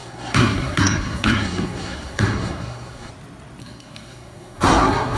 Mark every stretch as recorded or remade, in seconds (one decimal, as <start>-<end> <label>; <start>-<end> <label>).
0.0-3.1 remade; 3.1-3.6 recorded; 3.6-5.2 remade